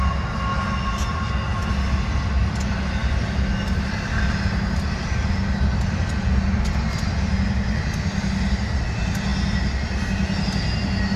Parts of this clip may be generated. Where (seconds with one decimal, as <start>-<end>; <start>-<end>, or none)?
none